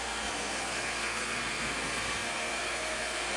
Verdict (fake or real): fake